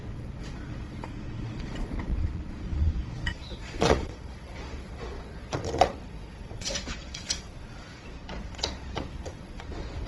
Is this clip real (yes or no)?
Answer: no